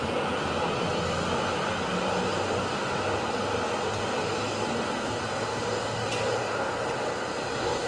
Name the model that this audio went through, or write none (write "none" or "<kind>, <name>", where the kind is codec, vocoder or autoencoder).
none